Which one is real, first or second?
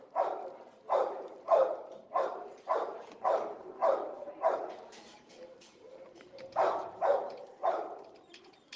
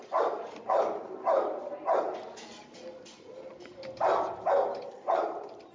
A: second